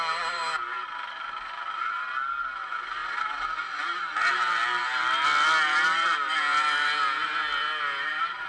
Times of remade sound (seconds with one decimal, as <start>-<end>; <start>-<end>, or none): none